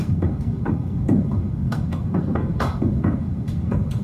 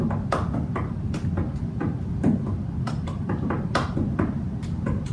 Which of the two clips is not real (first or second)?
first